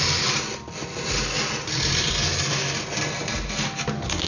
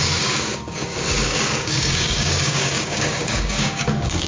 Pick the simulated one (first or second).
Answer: second